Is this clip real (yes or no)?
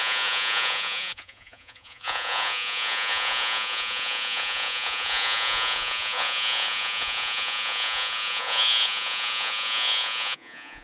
no